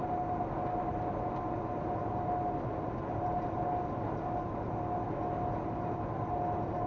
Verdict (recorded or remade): recorded